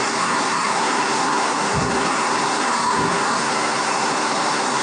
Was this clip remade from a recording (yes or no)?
yes